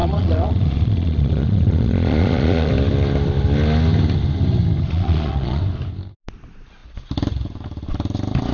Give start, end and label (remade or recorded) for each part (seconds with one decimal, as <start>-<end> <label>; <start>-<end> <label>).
0.0-2.7 remade; 2.7-4.9 recorded; 4.9-5.6 remade; 5.6-8.5 recorded